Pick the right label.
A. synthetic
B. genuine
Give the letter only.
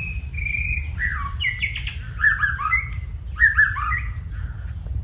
B